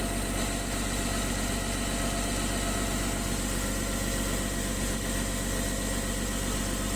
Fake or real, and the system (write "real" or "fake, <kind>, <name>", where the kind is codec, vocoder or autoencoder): real